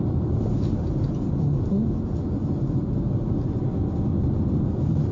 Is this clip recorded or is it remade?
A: recorded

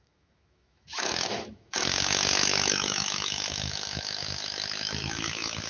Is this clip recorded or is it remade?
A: remade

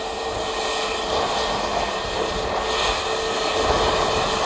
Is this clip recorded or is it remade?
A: recorded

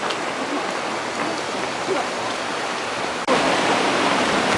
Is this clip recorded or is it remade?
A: recorded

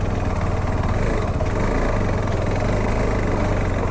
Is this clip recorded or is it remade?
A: recorded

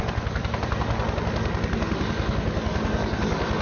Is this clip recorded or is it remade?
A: recorded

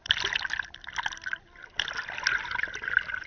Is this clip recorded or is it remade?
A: recorded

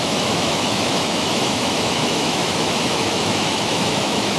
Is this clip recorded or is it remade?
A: remade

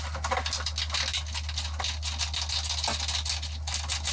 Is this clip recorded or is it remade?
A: recorded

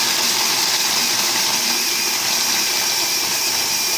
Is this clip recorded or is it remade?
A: recorded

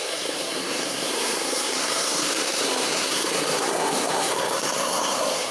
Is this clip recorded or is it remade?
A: remade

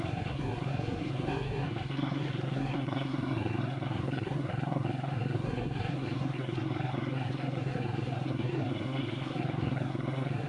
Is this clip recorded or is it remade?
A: remade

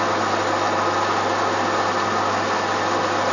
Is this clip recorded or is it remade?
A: recorded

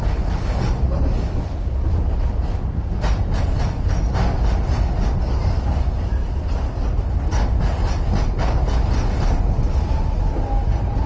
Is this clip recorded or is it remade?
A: recorded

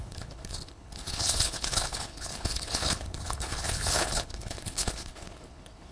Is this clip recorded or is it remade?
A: remade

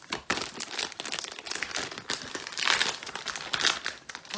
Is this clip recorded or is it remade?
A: recorded